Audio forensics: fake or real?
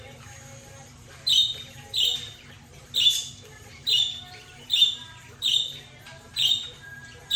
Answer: fake